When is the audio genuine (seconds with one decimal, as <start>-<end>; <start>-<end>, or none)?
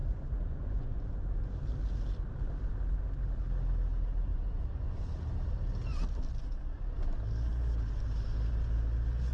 1.0-4.3; 5.1-9.3